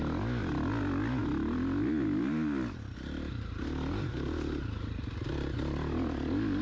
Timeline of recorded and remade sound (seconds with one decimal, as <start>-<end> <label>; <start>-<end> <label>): 0.0-6.6 recorded